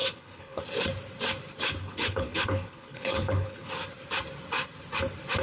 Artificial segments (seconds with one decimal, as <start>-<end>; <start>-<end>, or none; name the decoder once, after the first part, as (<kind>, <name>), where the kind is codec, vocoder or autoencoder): 0.0-0.6 (codec, HILCodec); 1.8-3.7